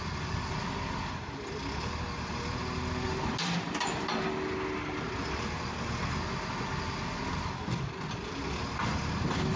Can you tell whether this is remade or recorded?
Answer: recorded